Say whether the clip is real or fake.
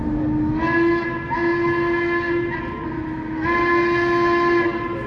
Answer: real